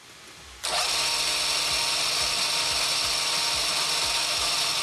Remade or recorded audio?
recorded